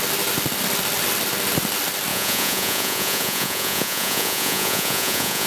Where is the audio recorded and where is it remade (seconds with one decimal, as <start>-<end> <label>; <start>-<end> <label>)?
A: 0.0-2.1 recorded; 2.1-5.5 remade